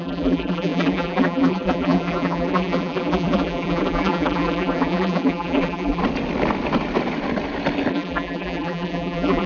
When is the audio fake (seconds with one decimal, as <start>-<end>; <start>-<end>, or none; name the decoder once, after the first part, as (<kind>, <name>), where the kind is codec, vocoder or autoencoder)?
0.0-6.0 (vocoder, BigVGAN v2); 7.9-9.5